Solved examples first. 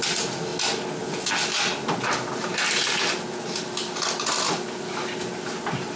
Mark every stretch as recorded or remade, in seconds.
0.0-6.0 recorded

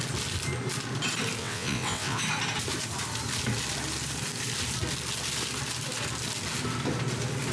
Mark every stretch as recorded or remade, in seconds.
0.0-1.4 recorded; 1.4-2.2 remade; 2.2-7.5 recorded